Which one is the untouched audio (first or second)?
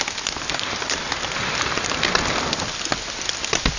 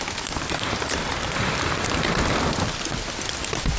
first